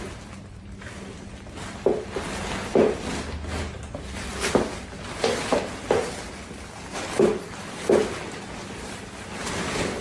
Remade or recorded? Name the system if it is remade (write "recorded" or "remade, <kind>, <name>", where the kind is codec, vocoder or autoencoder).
recorded